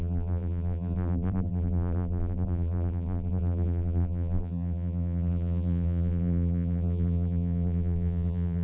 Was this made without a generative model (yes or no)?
no